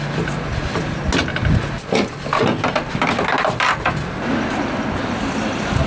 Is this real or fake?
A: real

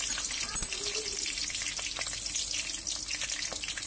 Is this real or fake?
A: real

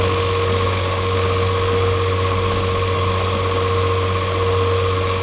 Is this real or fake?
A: real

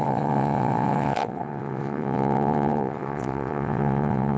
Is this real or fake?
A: fake